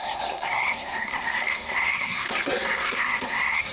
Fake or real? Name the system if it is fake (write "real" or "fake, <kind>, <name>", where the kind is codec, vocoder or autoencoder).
fake, codec, SNAC